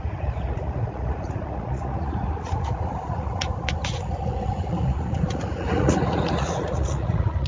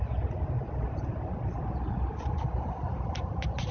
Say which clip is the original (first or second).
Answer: second